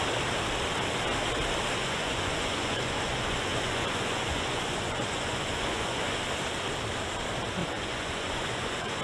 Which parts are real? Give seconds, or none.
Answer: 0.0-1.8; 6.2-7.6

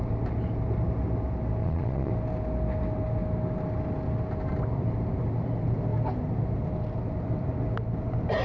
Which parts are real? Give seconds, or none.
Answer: 0.0-1.6; 2.1-8.4

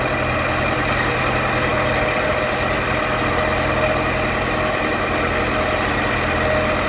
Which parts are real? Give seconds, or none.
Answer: 0.0-6.9